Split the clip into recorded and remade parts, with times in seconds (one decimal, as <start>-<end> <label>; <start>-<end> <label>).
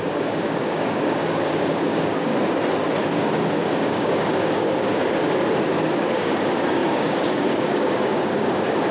0.0-2.3 remade; 2.3-3.0 recorded; 3.0-8.9 remade